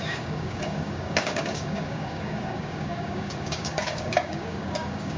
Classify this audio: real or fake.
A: fake